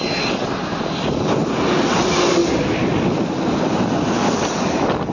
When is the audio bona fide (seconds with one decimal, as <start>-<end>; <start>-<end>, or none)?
0.0-5.1